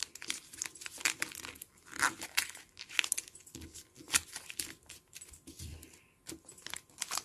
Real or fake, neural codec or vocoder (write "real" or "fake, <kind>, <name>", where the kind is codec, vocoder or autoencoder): real